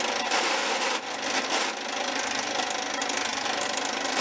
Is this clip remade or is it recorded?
recorded